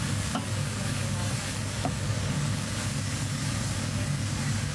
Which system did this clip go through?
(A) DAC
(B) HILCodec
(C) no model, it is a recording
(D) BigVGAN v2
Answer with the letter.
A